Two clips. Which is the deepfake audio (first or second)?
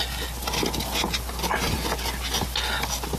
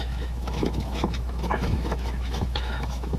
second